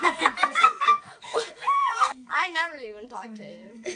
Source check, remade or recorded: remade